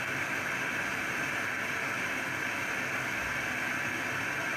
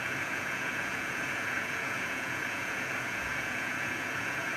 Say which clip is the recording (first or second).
first